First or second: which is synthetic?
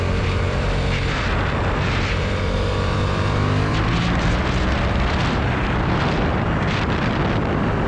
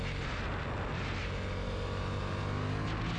first